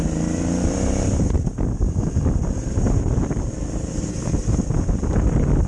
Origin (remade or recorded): recorded